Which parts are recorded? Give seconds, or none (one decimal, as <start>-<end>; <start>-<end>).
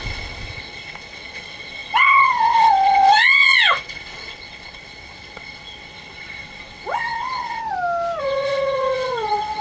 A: 7.6-8.2